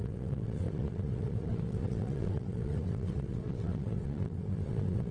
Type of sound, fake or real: fake